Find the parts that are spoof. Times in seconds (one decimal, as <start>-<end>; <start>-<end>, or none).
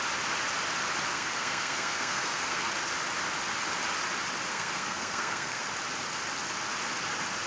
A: 1.1-2.7; 4.5-5.6